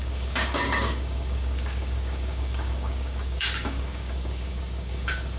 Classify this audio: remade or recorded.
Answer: remade